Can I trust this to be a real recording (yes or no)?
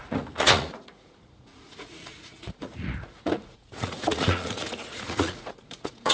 no